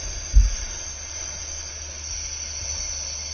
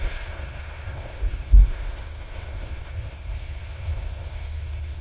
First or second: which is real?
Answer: first